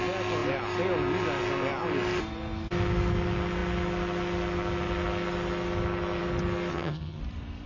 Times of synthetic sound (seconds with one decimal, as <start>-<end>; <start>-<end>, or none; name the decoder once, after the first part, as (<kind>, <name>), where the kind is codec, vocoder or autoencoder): 6.7-7.2 (vocoder, HiFi-GAN)